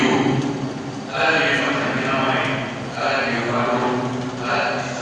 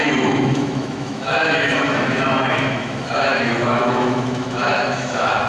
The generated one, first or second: second